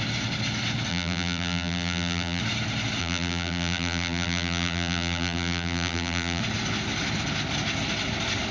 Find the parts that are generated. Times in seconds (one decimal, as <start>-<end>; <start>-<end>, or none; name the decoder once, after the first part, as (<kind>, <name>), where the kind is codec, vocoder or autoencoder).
0.9-2.4 (vocoder, BigVGAN v2); 3.0-6.4